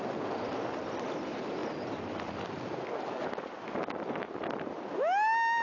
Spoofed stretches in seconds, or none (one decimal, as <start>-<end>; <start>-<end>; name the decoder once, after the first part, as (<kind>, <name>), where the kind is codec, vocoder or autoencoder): none